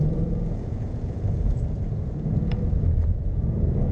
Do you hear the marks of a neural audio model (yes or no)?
yes